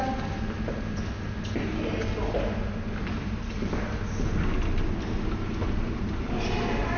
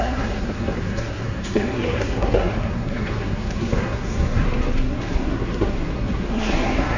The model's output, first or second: second